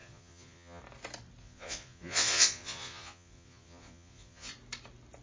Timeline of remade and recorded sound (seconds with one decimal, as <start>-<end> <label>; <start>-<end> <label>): 0.0-0.8 remade; 0.8-1.4 recorded; 1.4-4.5 remade; 4.5-5.2 recorded